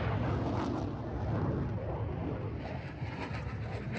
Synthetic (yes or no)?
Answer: no